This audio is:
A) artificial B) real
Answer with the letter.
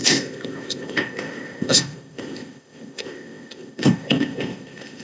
A